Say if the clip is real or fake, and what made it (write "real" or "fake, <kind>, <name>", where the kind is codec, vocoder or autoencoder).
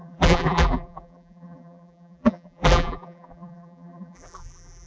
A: fake, vocoder, BigVGAN v2